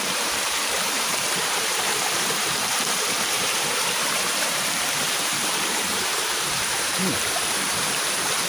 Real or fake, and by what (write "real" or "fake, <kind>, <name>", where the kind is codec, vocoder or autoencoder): fake, vocoder, BigVGAN v2